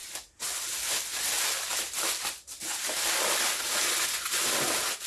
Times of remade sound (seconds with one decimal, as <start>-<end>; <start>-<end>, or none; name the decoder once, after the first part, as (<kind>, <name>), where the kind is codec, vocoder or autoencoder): none